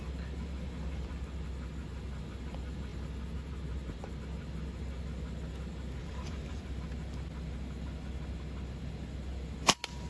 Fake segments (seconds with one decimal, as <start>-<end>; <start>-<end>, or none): 6.0-6.6